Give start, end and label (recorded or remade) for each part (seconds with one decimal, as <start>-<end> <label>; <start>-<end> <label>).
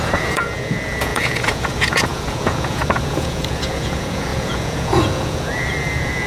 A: 0.0-6.3 remade